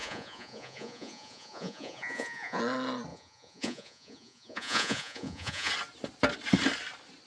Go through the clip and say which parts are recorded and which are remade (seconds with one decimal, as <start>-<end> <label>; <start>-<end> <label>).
0.0-2.6 remade; 2.6-3.1 recorded; 3.1-5.7 remade; 5.7-7.3 recorded